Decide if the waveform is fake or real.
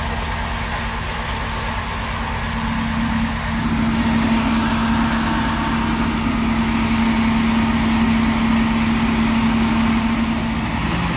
real